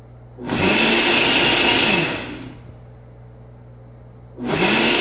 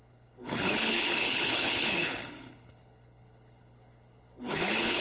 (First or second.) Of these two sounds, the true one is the first